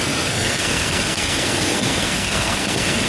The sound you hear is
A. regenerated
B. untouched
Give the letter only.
A